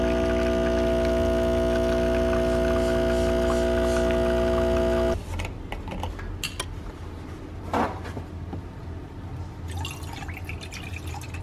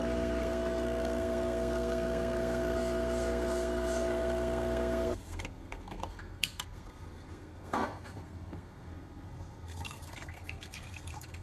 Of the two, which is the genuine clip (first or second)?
first